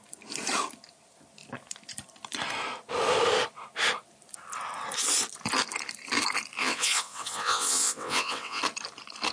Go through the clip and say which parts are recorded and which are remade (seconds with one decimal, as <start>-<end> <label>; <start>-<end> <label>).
0.0-6.6 recorded; 6.6-8.6 remade; 8.6-9.3 recorded